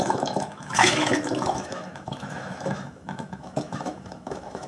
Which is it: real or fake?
fake